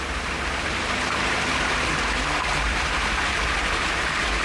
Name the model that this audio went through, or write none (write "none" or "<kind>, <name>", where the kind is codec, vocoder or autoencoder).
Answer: none